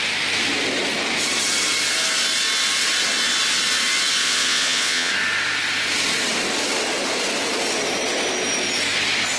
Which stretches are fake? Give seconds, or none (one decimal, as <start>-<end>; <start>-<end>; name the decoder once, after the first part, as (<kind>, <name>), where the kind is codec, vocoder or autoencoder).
4.2-5.1 (vocoder, Vocos)